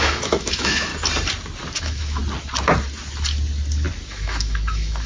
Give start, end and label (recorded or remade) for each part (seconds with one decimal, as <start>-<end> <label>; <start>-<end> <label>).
0.0-0.9 remade; 0.9-1.8 recorded; 1.8-2.2 remade; 2.2-4.1 recorded; 4.1-5.1 remade